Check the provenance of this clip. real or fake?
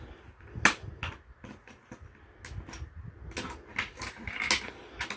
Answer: real